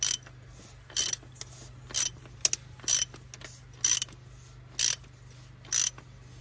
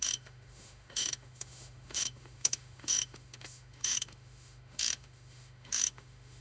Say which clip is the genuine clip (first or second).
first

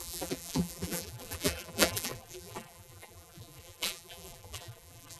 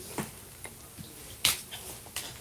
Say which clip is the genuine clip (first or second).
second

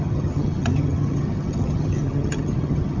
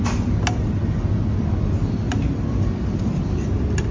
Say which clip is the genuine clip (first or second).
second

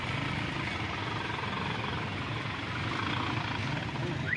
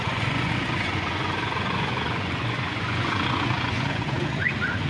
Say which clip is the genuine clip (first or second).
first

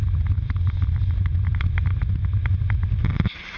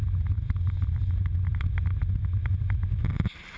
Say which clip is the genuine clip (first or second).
second